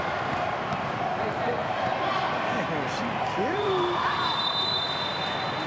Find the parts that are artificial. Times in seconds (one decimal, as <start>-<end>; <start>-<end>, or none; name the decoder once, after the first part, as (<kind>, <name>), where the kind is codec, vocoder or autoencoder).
1.6-4.7 (vocoder, BigVGAN v2)